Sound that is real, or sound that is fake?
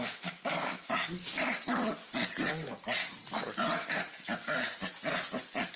real